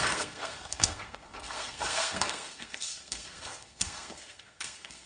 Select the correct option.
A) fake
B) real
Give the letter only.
A